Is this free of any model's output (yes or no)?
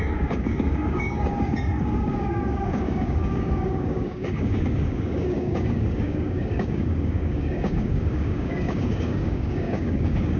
no